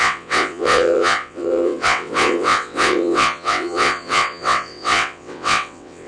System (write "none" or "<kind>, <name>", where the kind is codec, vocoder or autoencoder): vocoder, WaveNeXt